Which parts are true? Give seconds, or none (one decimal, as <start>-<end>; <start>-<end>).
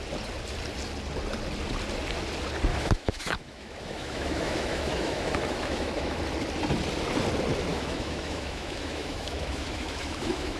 0.0-2.7; 6.2-7.7